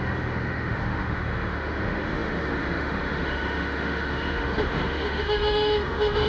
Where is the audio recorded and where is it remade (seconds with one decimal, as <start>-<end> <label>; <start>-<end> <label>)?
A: 0.0-6.3 remade